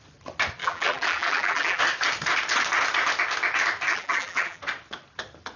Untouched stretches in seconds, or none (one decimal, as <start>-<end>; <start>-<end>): 0.0-0.6; 1.8-3.9; 4.6-5.6